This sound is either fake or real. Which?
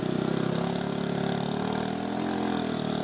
real